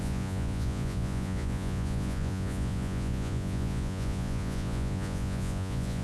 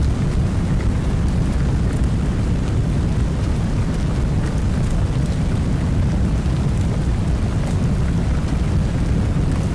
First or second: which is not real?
first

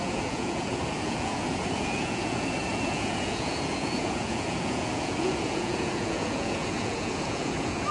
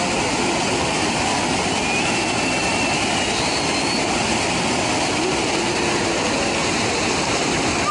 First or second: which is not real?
first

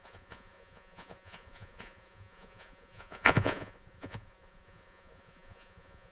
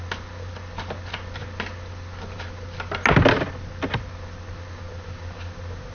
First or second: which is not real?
first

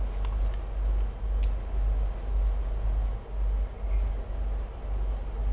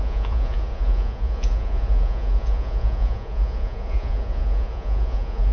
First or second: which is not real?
second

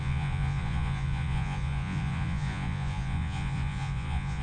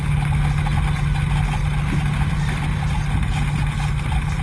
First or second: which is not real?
first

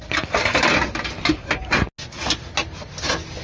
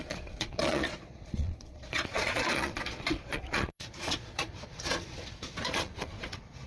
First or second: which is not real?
second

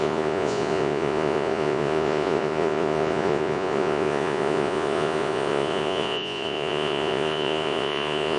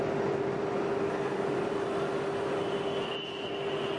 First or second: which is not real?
first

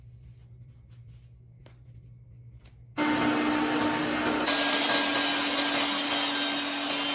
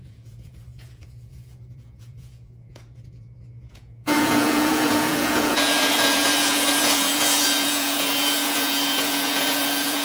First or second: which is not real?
second